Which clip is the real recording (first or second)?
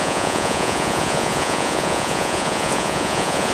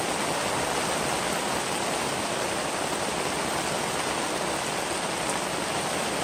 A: second